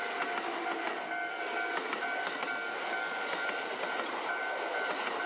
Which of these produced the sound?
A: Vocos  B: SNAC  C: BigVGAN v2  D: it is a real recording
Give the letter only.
D